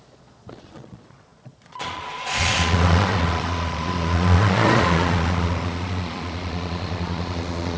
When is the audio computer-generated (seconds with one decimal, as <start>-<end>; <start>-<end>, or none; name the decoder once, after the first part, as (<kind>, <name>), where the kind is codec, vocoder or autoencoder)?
0.0-7.8 (vocoder, Vocos)